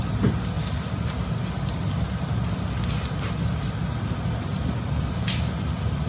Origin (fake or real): real